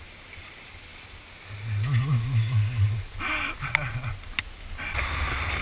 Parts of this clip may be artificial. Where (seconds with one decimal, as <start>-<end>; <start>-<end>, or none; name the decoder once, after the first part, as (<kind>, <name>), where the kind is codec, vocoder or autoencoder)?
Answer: none